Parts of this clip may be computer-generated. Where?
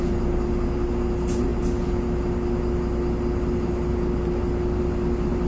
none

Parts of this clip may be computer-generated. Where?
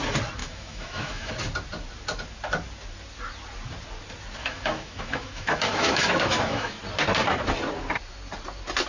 0.4-1.3 (autoencoder, DAC-VAE); 4.4-6.8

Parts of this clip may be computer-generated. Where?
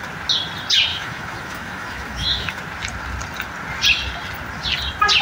0.9-2.6 (autoencoder, DAC-VAE)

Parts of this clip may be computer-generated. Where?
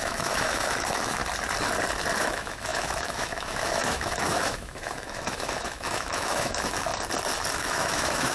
0.0-1.2 (autoencoder, DAC-VAE); 2.2-6.9; 7.5-8.3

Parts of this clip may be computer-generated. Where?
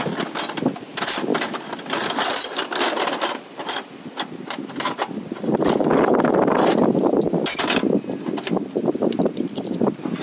none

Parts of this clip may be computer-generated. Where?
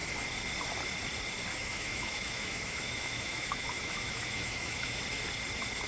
1.5-5.0 (autoencoder, DAC-VAE)